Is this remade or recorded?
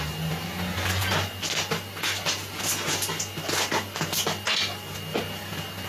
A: recorded